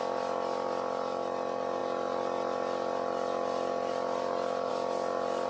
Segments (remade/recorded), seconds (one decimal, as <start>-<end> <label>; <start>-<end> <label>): 0.0-5.5 recorded